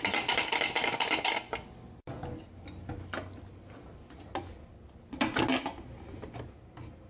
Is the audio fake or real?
real